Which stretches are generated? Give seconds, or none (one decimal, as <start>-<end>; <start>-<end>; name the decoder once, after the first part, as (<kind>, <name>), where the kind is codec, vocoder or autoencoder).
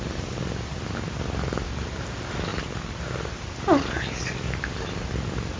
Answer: none